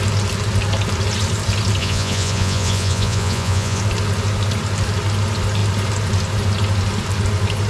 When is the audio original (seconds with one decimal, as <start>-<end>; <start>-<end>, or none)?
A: 0.0-1.8; 3.8-7.7